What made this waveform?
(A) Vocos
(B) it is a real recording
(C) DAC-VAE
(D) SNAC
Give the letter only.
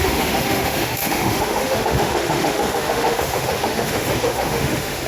C